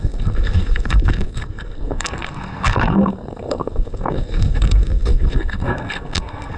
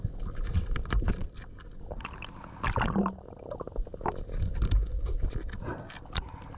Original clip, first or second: second